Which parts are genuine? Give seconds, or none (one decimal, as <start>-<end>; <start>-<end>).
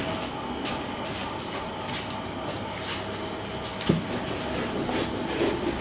0.0-5.8